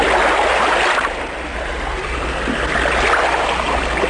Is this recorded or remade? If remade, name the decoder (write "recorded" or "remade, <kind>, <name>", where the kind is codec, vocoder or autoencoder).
recorded